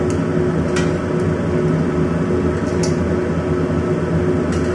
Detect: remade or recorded recorded